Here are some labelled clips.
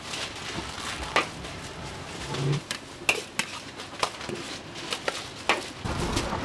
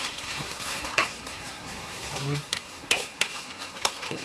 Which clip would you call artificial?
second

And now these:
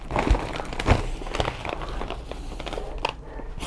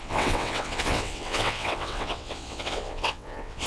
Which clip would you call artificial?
second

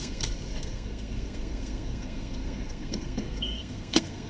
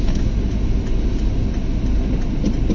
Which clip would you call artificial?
first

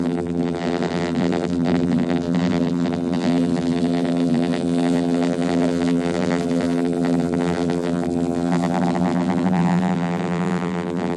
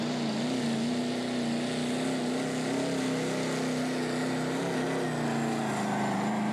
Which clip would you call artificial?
first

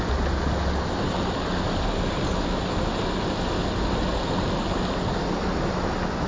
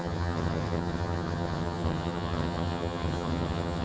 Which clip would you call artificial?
second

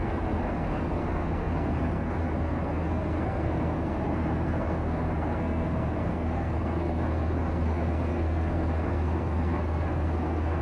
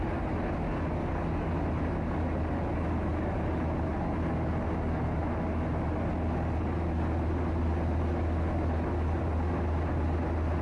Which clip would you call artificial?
first